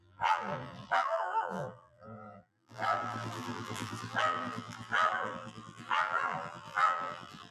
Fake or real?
fake